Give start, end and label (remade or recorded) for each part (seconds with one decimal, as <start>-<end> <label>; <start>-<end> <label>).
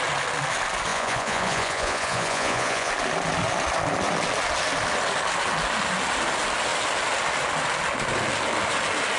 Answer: 0.0-0.9 recorded; 0.9-2.9 remade; 2.9-9.2 recorded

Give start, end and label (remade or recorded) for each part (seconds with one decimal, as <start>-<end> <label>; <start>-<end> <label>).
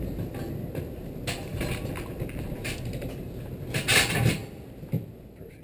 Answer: 0.0-5.6 recorded